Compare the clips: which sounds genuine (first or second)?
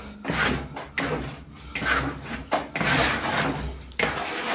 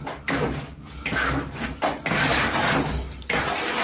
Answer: first